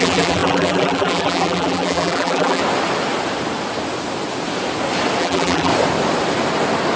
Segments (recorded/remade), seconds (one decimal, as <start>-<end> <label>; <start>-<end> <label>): 0.0-2.6 remade; 2.6-5.2 recorded; 5.2-5.7 remade; 5.7-7.0 recorded